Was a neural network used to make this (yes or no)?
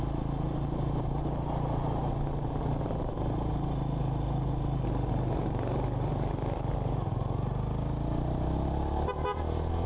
no